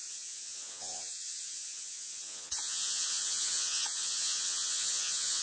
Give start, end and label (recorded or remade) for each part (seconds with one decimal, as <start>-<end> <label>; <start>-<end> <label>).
0.0-5.4 remade